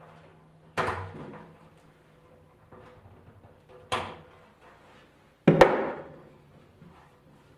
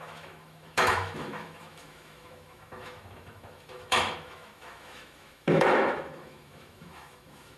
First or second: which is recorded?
first